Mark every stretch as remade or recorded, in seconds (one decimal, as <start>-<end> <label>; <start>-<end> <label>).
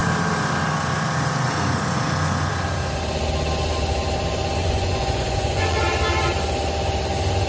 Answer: 0.0-4.6 recorded; 4.6-5.8 remade; 5.8-7.5 recorded